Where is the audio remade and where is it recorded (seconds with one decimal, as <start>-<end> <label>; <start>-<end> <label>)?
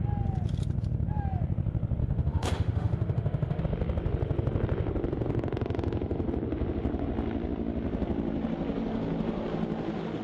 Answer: 0.0-2.0 recorded; 2.0-3.6 remade; 3.6-10.2 recorded